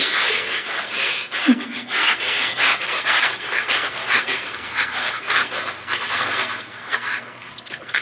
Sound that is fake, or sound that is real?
fake